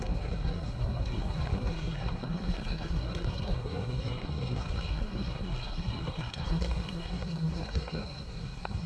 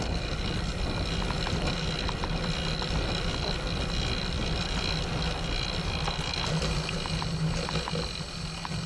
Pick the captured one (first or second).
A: second